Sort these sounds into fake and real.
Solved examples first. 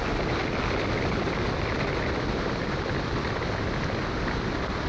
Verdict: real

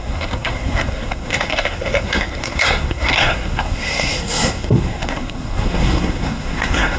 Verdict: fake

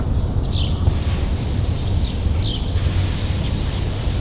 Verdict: real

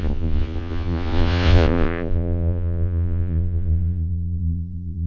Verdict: fake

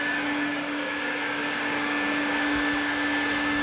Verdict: fake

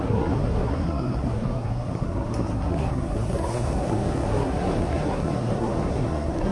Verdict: fake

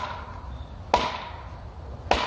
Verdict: real